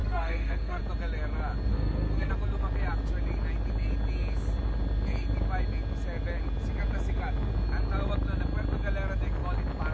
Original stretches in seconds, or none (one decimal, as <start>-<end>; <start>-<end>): 0.8-1.7; 2.3-9.9